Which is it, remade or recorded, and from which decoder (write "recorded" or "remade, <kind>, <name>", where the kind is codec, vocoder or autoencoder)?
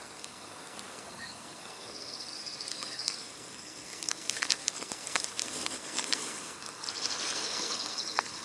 remade, codec, SNAC